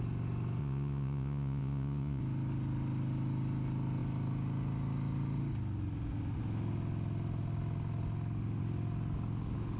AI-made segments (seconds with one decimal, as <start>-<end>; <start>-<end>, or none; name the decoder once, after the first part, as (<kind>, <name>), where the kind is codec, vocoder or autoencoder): 0.6-2.2 (vocoder, Vocos)

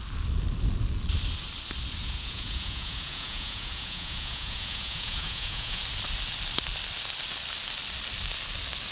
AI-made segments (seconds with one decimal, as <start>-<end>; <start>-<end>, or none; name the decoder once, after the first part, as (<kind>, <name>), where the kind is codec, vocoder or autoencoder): 2.0-5.8 (vocoder, Vocos)